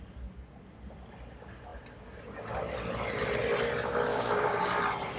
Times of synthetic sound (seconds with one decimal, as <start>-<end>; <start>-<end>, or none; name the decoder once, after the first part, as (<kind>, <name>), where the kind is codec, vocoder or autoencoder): 4.1-4.8 (codec, DAC)